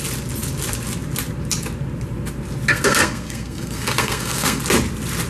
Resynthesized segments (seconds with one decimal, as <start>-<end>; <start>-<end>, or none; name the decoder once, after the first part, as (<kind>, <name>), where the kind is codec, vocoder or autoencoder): 2.7-4.6 (codec, SNAC)